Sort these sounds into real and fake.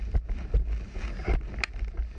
real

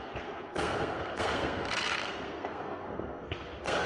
fake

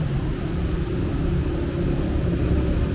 real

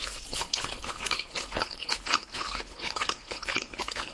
fake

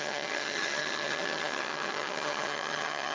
fake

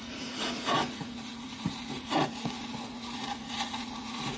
fake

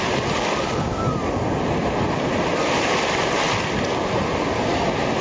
real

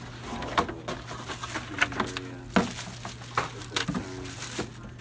real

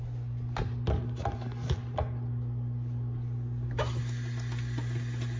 real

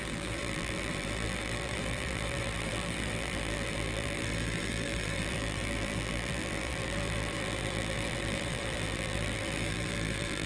fake